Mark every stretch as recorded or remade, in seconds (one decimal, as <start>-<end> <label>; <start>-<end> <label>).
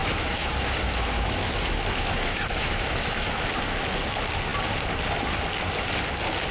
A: 0.0-3.5 remade; 3.5-6.5 recorded